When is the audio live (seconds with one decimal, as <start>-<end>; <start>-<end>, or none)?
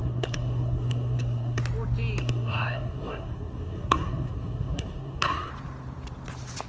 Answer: 1.6-2.2; 5.5-6.7